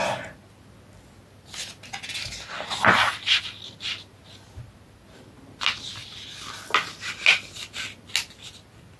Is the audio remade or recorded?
recorded